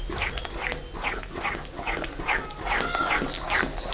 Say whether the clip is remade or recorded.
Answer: recorded